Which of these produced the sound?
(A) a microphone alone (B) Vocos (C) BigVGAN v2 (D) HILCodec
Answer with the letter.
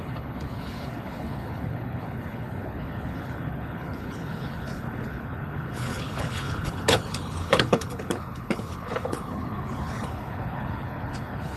D